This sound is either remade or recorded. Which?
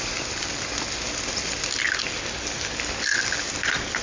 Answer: recorded